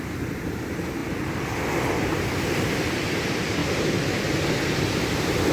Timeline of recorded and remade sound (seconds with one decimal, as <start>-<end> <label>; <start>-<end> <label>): 0.0-5.5 recorded